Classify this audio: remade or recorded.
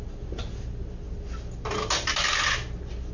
recorded